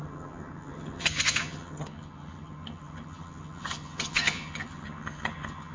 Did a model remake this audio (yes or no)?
yes